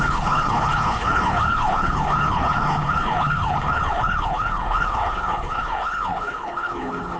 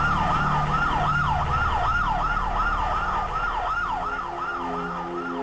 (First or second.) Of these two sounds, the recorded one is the second